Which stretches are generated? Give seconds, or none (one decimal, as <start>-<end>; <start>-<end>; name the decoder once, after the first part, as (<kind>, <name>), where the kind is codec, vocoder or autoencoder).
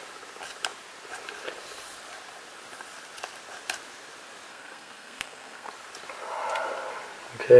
4.5-5.7 (codec, SNAC)